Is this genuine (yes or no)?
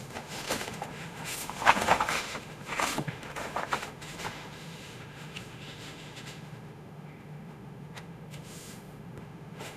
no